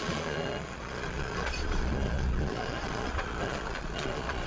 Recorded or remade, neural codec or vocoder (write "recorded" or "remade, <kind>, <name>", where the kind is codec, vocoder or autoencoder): remade, vocoder, Vocos